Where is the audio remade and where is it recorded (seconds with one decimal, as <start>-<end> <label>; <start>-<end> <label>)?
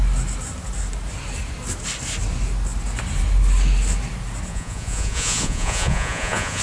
0.0-4.5 recorded; 4.5-6.6 remade